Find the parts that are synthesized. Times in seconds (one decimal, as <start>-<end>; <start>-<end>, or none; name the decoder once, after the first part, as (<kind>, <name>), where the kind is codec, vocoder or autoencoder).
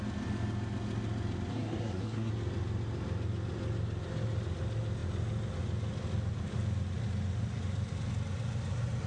1.5-2.3 (codec, SNAC)